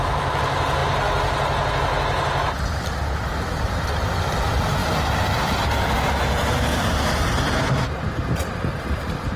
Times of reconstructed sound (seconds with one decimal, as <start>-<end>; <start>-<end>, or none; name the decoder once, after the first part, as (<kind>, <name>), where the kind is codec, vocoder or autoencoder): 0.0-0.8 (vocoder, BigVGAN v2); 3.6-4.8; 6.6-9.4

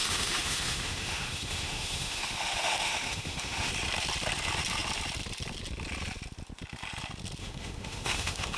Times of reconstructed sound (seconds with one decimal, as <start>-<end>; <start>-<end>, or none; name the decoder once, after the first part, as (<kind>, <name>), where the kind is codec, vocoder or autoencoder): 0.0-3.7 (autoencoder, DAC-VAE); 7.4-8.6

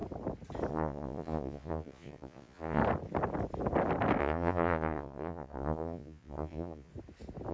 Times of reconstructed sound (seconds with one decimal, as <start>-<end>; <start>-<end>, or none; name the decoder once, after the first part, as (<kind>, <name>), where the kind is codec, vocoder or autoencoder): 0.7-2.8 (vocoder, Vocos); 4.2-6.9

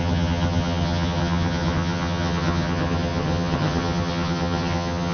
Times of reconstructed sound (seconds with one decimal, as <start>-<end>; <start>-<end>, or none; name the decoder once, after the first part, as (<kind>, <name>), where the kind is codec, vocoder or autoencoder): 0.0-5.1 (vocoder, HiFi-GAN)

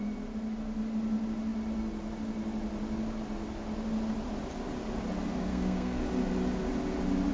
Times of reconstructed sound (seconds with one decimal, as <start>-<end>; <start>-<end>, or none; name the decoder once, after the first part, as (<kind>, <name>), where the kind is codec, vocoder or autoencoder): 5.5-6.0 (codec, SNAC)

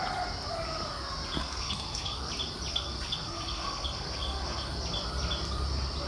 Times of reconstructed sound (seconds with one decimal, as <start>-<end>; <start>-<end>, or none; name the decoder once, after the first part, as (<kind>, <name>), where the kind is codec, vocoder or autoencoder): 1.4-2.3 (codec, SNAC); 2.7-4.7

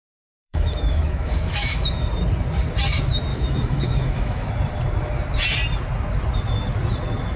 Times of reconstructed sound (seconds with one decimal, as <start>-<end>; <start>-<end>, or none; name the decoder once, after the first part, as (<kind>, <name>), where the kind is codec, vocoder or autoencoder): 0.0-2.1 (autoencoder, DAC-VAE); 3.3-4.5

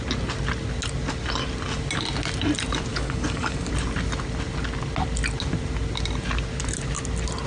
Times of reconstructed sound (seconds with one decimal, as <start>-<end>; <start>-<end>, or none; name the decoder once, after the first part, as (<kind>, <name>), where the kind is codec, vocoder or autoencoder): 2.9-3.7 (codec, DAC)